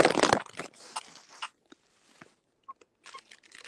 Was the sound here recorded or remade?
recorded